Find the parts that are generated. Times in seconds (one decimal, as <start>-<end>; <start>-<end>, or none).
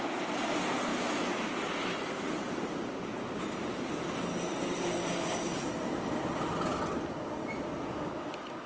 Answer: none